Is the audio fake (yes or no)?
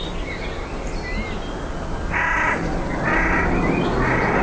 no